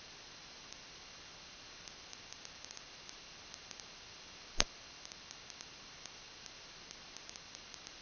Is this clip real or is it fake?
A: real